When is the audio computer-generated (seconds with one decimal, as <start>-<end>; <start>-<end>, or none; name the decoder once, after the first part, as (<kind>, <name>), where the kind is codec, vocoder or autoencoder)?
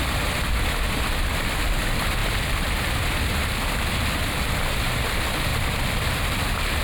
5.5-6.1 (vocoder, BigVGAN v2)